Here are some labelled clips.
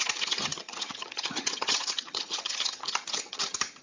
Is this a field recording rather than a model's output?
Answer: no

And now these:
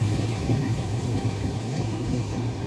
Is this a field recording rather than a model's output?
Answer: no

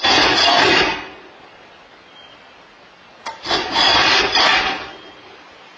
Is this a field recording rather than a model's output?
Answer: yes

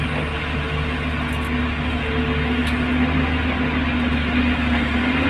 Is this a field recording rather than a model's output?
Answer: yes